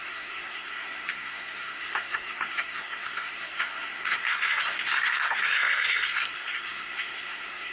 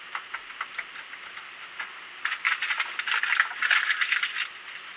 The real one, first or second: second